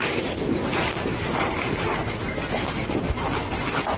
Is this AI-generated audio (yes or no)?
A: no